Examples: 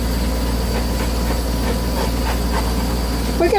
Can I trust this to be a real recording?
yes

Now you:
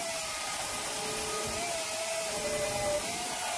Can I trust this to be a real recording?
yes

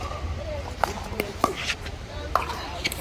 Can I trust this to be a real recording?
no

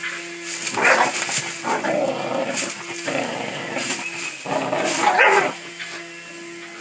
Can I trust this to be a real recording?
yes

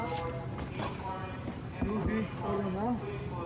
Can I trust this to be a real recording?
yes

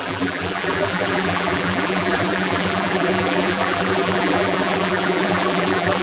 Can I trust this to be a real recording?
no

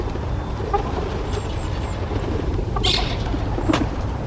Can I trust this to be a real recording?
yes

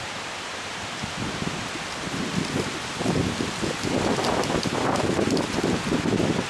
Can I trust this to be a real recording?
yes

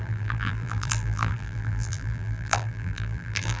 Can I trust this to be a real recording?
no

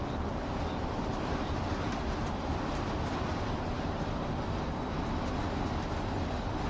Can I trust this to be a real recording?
yes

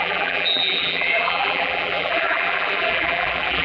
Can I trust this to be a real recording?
no